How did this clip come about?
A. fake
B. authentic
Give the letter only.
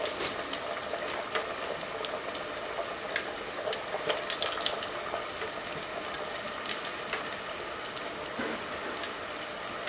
B